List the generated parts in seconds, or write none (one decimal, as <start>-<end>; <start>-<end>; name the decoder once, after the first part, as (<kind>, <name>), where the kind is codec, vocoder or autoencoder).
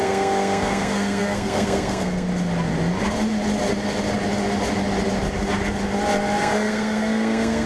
0.0-2.3 (codec, SNAC); 6.4-7.7